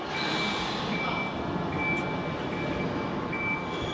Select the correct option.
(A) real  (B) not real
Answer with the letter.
A